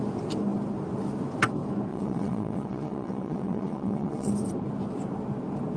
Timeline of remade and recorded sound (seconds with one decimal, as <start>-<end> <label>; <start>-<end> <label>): 0.0-1.9 recorded; 1.9-4.3 remade; 4.3-5.8 recorded